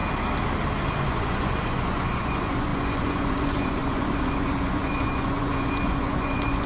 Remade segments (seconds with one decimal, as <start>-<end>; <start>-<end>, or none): 0.9-6.7